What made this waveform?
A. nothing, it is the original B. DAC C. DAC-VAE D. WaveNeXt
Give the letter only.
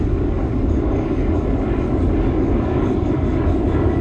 B